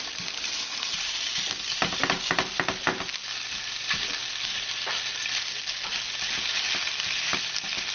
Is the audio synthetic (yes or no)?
no